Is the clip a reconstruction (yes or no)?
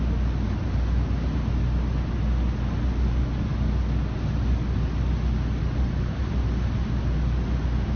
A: no